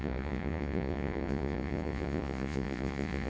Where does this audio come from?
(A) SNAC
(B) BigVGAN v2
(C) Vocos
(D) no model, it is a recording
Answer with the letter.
C